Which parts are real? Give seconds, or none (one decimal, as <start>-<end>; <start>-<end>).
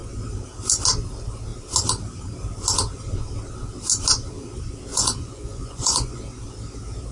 0.0-4.9; 6.2-7.1